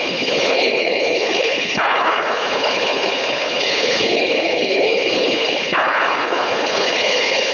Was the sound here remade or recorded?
remade